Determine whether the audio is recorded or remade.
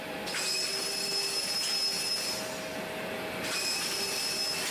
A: recorded